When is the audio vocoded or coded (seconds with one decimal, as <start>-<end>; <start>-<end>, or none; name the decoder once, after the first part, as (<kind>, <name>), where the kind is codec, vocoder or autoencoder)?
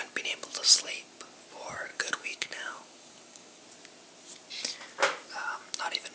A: 1.9-3.6 (codec, DAC)